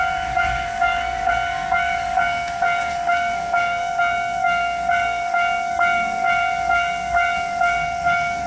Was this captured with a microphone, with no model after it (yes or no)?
no